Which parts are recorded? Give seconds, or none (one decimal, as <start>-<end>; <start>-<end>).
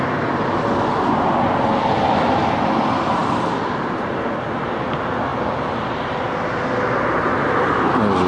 0.0-5.3; 6.7-8.3